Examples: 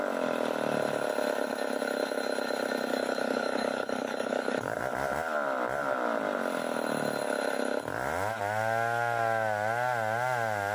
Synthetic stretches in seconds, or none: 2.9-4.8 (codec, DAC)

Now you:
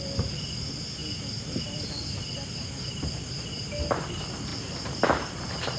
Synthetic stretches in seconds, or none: none

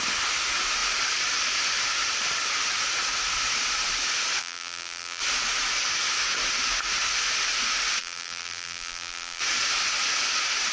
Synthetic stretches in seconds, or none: 4.4-5.2 (vocoder, BigVGAN v2); 8.0-9.4

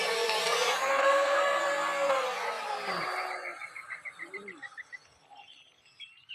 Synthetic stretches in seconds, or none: 1.0-1.6 (codec, SNAC)

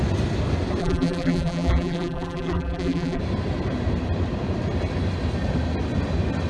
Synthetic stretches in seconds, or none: 0.8-3.2 (vocoder, BigVGAN v2)

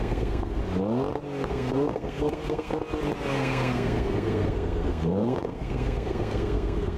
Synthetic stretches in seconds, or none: 0.0-0.6 (codec, SNAC); 1.5-2.7; 3.3-7.0